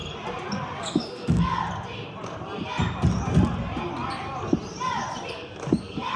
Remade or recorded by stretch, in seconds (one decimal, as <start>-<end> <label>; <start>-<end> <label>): 0.0-0.8 recorded; 0.8-1.6 remade; 1.6-5.3 recorded; 5.3-6.2 remade

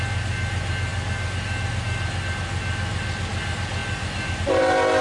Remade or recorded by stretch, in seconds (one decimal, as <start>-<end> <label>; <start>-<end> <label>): 0.0-5.0 recorded

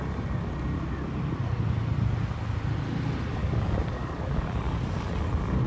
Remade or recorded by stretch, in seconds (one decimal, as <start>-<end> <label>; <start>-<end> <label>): 0.0-3.4 recorded; 3.4-4.4 remade; 4.4-5.7 recorded

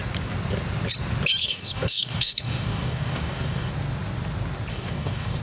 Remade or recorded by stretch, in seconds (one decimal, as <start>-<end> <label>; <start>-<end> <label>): 0.0-1.4 recorded; 1.4-3.7 remade; 3.7-4.7 recorded; 4.7-5.4 remade

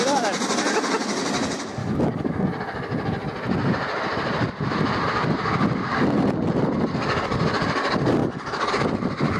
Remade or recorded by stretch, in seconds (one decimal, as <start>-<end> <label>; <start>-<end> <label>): 0.0-1.8 recorded; 1.8-2.4 remade; 2.4-8.2 recorded; 8.2-8.7 remade; 8.7-9.4 recorded

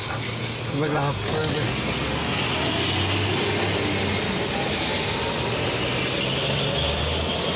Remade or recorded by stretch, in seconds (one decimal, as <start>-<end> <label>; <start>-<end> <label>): 0.0-7.6 recorded